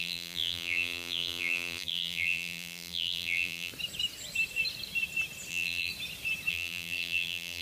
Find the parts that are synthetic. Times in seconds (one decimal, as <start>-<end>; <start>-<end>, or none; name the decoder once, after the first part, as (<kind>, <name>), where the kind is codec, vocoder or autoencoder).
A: 0.0-3.7 (vocoder, BigVGAN v2); 5.5-5.9; 6.5-7.6